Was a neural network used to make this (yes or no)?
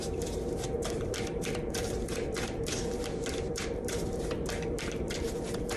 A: yes